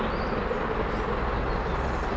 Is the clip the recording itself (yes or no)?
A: yes